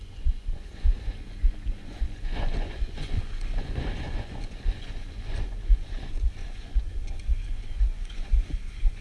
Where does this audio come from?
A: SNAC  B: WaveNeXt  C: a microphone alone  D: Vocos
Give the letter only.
D